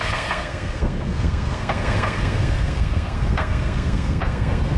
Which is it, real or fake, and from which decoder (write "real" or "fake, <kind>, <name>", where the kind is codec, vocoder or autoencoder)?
fake, codec, SNAC